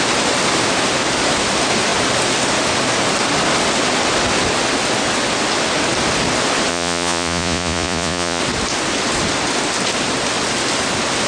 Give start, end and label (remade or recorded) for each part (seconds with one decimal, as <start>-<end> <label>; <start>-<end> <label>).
0.0-6.7 recorded; 6.7-8.4 remade; 8.4-11.3 recorded